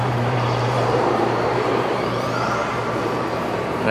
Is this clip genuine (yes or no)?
no